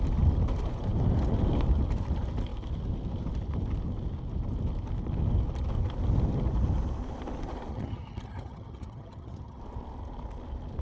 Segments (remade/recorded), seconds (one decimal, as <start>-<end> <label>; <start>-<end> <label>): 0.0-7.7 recorded; 7.7-9.6 remade; 9.6-10.8 recorded

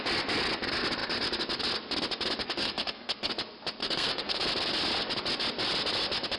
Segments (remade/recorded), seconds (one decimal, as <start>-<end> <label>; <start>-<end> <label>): 0.0-2.4 recorded; 2.4-3.3 remade; 3.3-3.8 recorded; 3.8-4.4 remade; 4.4-6.4 recorded

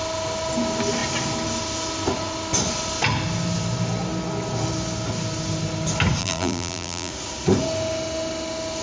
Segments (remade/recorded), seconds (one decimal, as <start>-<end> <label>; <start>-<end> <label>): 0.0-6.2 recorded; 6.2-7.1 remade; 7.1-8.8 recorded

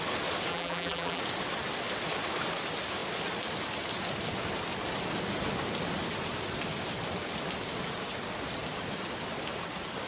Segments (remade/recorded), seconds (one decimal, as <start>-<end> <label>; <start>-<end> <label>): 0.0-0.5 recorded; 0.5-1.2 remade; 1.2-10.1 recorded

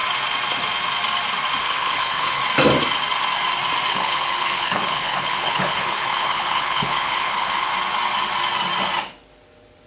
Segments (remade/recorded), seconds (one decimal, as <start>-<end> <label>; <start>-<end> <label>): 0.0-1.6 recorded; 1.6-2.4 remade; 2.4-3.9 recorded; 3.9-7.7 remade; 7.7-9.9 recorded

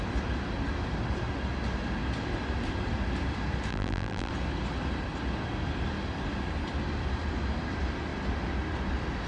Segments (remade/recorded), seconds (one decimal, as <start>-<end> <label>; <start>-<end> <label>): 0.0-3.7 recorded; 3.7-4.3 remade; 4.3-9.3 recorded

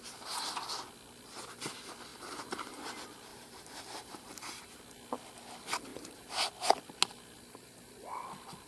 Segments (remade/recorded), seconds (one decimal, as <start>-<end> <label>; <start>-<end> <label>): 0.0-2.1 recorded; 2.1-2.9 remade; 2.9-3.3 recorded; 3.3-4.8 remade; 4.8-5.9 recorded; 5.9-6.5 remade; 6.5-8.7 recorded

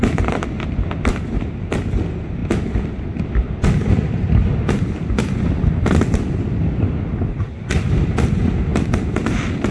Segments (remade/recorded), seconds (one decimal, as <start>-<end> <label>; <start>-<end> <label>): 0.0-9.7 recorded